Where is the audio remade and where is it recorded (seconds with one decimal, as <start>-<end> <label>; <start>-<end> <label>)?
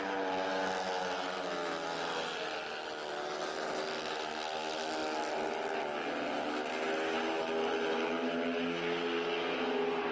0.0-10.1 recorded